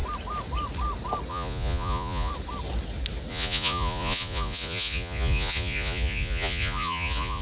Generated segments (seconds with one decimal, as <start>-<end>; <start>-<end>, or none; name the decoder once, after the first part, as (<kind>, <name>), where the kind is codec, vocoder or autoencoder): 1.3-2.3 (vocoder, Vocos); 3.3-7.4